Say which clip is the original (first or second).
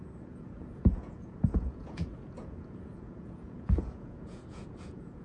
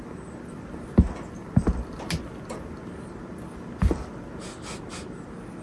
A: second